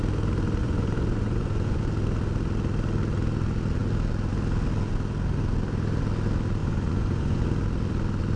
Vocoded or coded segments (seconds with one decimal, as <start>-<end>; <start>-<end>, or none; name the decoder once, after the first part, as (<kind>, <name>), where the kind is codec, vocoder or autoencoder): 0.6-1.8 (vocoder, Vocos); 6.6-7.4